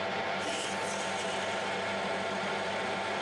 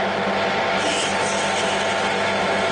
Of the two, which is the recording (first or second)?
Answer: second